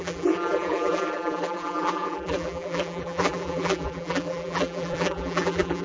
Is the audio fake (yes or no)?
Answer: yes